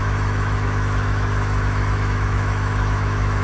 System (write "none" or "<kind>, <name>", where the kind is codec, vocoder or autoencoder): autoencoder, DAC-VAE